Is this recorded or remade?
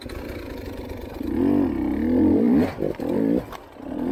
recorded